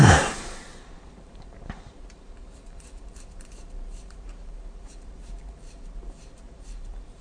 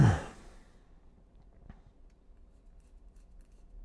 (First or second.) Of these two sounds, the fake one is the first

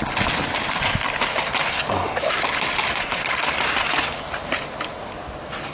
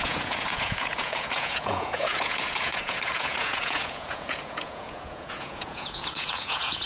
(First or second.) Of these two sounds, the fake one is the second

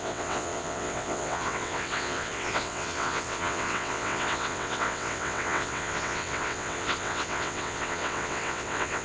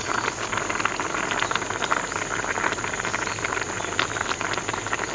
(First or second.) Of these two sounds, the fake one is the first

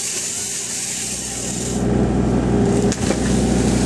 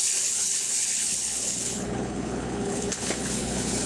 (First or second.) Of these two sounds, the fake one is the second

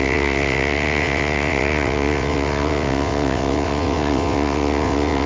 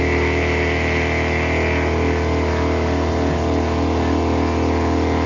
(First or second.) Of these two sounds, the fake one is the first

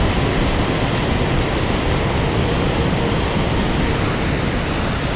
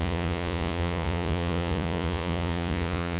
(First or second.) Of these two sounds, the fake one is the second